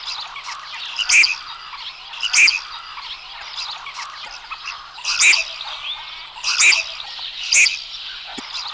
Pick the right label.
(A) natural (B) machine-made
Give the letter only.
A